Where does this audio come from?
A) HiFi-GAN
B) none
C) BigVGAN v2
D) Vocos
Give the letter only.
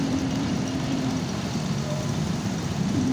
C